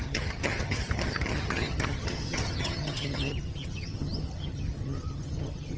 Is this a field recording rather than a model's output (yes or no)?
no